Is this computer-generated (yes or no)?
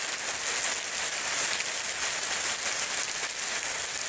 no